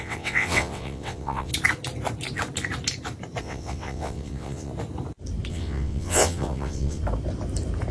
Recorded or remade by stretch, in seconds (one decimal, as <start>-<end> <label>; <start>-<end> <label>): 0.0-1.5 remade; 1.5-3.4 recorded; 3.4-4.7 remade; 4.7-5.5 recorded; 5.5-7.0 remade; 7.0-7.9 recorded